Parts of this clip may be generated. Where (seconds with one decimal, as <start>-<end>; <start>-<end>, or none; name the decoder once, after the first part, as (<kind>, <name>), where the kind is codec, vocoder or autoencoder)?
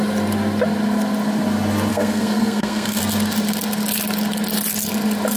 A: 1.9-3.0 (codec, SNAC)